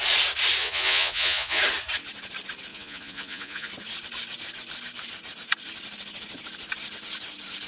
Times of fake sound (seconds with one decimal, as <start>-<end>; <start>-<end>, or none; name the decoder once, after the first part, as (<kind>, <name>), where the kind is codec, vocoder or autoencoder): 0.6-1.6 (vocoder, Vocos); 2.7-3.7